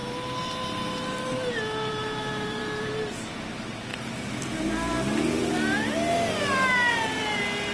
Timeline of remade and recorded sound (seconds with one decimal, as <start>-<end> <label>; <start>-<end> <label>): 0.0-1.9 recorded; 1.9-2.9 remade; 2.9-7.7 recorded